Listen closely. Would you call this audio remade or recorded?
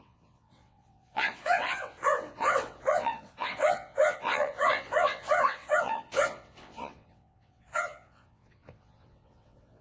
remade